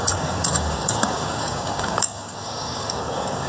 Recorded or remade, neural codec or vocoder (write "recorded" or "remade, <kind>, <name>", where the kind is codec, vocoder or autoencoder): remade, codec, DAC